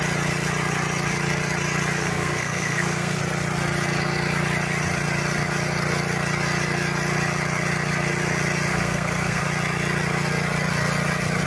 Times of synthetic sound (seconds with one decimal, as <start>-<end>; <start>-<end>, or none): 2.0-3.2; 8.7-9.4

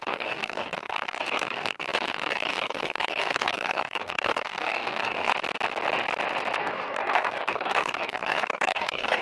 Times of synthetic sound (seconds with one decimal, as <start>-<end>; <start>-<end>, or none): 0.0-5.3; 6.6-9.2

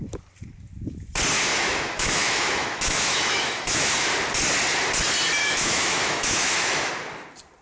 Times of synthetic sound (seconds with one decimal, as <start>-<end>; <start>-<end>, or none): 1.5-4.1; 5.4-6.9

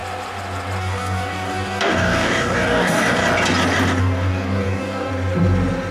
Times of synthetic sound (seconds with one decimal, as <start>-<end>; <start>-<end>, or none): 0.8-3.2; 4.0-5.1

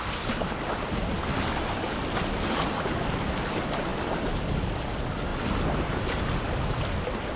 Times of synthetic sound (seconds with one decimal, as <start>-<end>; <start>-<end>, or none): none

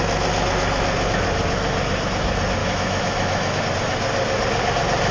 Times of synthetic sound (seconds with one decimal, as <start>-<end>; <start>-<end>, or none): 2.6-3.6